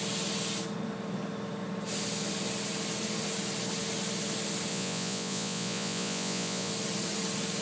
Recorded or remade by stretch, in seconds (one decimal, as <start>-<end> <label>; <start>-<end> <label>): 0.0-4.7 recorded; 4.7-6.7 remade; 6.7-7.6 recorded